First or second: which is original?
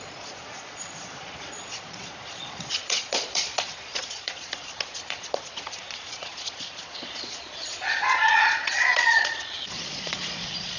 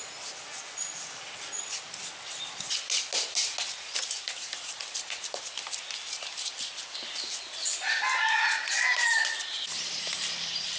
second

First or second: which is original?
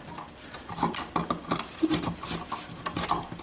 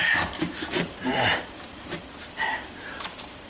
first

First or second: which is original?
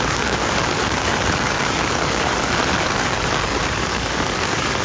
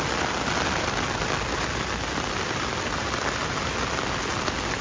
second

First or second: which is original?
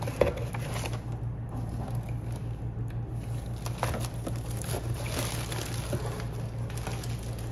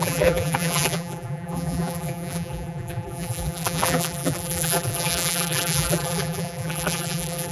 first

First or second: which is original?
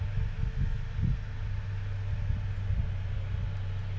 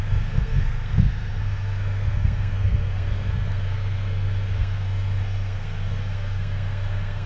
first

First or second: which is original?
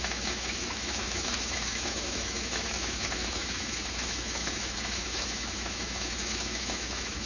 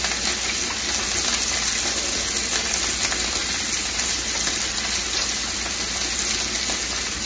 second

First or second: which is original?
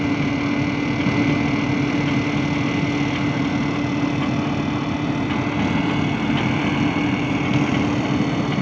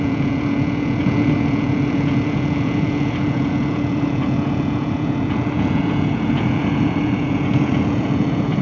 first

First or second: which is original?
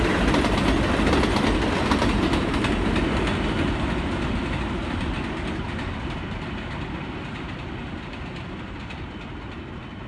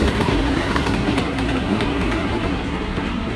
first